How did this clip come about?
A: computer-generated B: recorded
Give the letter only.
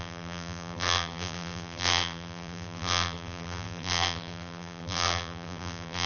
A